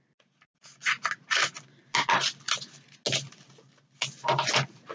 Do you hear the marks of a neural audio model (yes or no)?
no